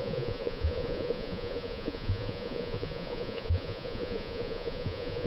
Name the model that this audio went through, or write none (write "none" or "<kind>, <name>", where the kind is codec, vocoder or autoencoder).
vocoder, Vocos